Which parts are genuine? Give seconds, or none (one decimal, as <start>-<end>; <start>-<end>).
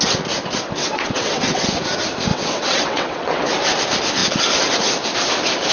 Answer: 0.0-0.8; 1.8-2.3; 3.5-5.7